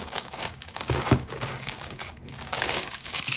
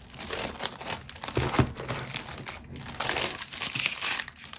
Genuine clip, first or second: second